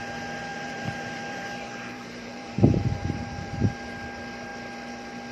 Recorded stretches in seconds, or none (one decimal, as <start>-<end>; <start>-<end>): 0.0-0.5; 3.7-5.3